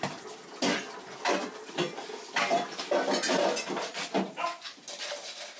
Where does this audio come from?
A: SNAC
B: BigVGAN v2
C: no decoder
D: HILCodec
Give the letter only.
C